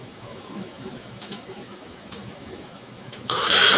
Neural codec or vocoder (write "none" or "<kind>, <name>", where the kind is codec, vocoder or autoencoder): autoencoder, DAC-VAE